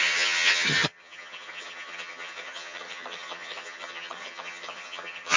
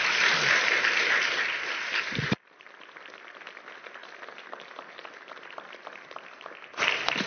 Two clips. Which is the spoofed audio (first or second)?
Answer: first